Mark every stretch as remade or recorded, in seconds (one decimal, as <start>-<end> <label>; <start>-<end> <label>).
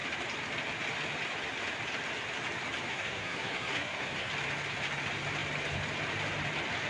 0.0-2.9 recorded; 2.9-4.3 remade; 4.3-6.9 recorded